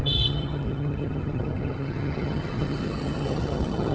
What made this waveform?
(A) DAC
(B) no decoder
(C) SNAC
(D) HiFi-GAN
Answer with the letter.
D